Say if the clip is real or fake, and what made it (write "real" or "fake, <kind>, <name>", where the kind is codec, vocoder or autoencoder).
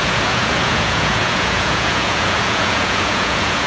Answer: fake, vocoder, Vocos